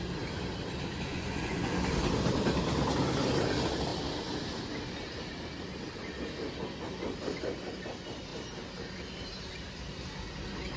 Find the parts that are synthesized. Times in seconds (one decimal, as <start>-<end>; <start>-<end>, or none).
1.1-1.9